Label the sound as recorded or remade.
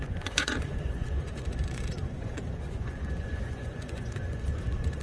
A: remade